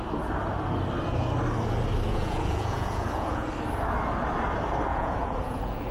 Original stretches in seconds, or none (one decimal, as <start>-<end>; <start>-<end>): 0.0-2.1; 3.5-4.9